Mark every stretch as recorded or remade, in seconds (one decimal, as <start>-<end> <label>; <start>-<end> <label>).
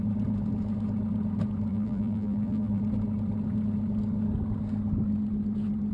0.0-1.7 recorded; 1.7-2.8 remade; 2.8-5.9 recorded